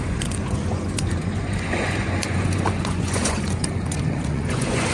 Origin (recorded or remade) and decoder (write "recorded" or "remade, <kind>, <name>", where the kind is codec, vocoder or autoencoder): remade, vocoder, Vocos